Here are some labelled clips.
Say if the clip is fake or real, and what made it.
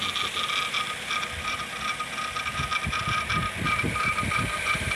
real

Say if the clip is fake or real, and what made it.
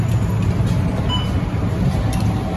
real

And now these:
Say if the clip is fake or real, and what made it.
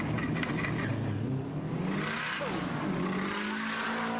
real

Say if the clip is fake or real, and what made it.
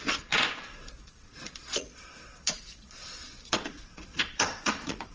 fake, vocoder, Vocos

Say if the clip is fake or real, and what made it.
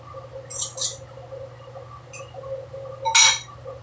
real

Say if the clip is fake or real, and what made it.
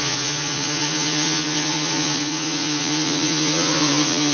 fake, vocoder, Vocos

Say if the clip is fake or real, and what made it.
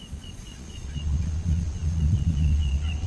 fake, vocoder, Vocos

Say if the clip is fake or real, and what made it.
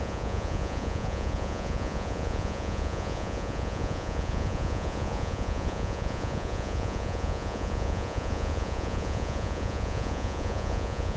fake, vocoder, Vocos